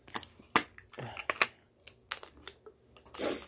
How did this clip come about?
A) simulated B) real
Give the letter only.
B